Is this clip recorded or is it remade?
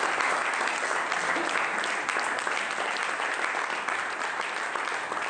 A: recorded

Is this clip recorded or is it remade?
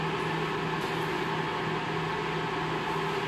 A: recorded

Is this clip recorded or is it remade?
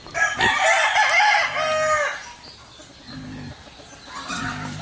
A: recorded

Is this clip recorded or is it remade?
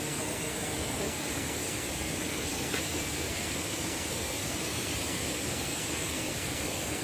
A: remade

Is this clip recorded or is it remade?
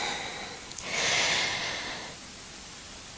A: recorded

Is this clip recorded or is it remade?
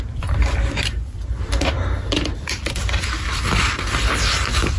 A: remade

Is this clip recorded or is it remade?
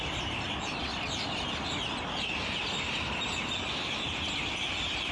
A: recorded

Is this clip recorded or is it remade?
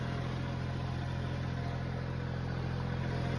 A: recorded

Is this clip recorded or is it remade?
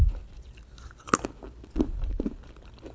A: recorded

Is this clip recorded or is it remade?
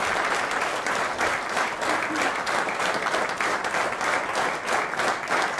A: recorded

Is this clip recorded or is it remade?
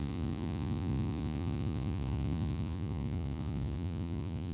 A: remade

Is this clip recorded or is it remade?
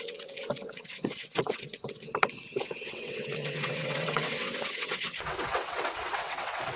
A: remade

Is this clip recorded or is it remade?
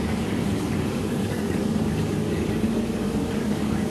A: remade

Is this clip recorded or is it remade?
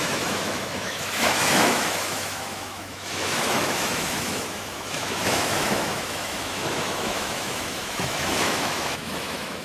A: remade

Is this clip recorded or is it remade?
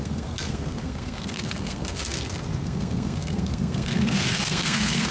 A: remade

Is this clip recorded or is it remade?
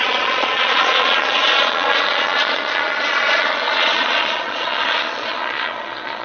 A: remade